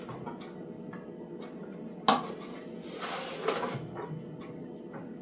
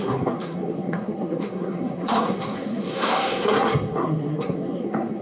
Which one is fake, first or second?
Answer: second